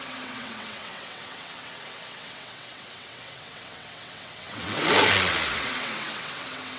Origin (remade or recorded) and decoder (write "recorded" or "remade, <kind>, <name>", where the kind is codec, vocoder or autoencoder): remade, vocoder, WaveNeXt